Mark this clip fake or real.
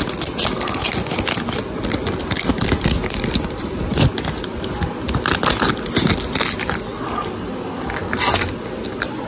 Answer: real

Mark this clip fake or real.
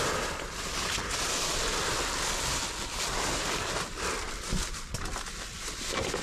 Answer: real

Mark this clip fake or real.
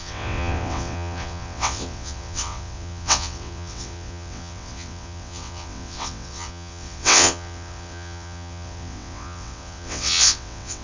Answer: fake